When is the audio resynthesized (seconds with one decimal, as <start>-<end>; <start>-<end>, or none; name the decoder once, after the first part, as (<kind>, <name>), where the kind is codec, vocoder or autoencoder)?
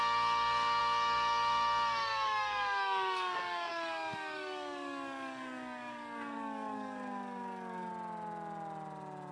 0.0-7.9 (codec, DAC)